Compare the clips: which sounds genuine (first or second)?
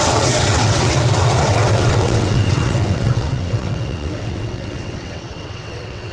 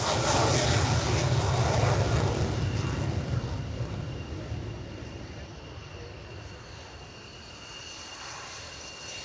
second